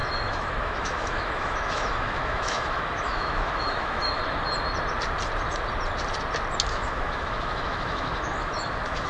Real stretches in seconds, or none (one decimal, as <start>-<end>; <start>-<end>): 4.2-6.7